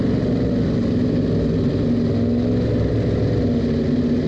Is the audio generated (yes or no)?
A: no